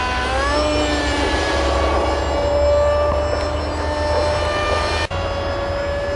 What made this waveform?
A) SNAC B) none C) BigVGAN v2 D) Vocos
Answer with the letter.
B